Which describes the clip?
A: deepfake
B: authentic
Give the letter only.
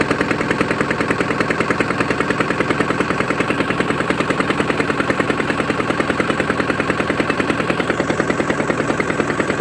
A